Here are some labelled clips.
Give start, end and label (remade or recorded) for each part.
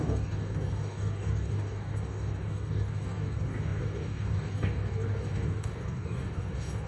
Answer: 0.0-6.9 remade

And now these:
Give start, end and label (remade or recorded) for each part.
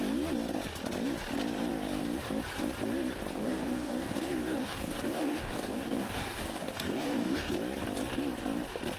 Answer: 0.0-3.4 recorded; 3.4-7.5 remade; 7.5-9.0 recorded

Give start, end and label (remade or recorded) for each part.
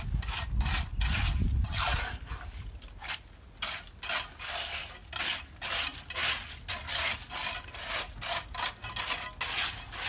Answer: 0.0-10.1 recorded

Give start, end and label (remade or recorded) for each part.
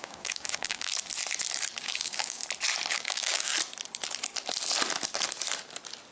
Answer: 0.0-0.9 remade; 0.9-1.8 recorded; 1.8-2.4 remade; 2.4-2.9 recorded; 2.9-3.5 remade; 3.5-6.1 recorded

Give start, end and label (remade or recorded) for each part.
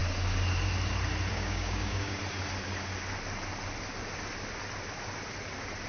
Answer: 0.0-1.3 recorded; 1.3-2.2 remade; 2.2-5.9 recorded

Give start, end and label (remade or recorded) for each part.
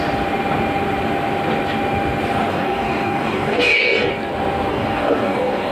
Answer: 0.0-2.5 recorded; 2.5-4.1 remade; 4.1-4.7 recorded; 4.7-5.7 remade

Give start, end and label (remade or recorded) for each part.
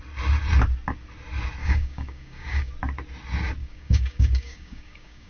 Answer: 0.0-1.6 recorded; 1.6-2.7 remade; 2.7-3.6 recorded; 3.6-5.3 remade